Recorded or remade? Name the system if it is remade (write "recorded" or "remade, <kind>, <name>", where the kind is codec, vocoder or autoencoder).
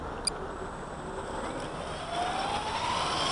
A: recorded